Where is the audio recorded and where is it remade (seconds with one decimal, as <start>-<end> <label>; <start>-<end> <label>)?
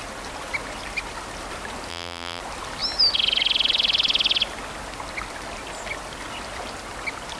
0.0-1.9 recorded; 1.9-2.4 remade; 2.4-7.4 recorded